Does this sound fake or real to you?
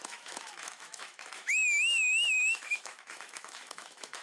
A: fake